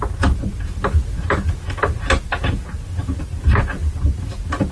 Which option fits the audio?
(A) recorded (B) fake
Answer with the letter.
A